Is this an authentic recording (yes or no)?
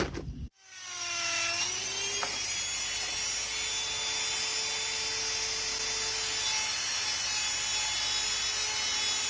yes